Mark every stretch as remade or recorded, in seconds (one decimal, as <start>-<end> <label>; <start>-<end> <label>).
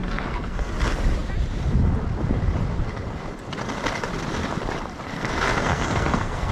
0.0-0.7 remade; 0.7-5.1 recorded; 5.1-6.5 remade